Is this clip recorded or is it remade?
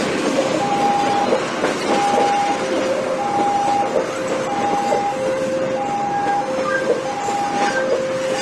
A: recorded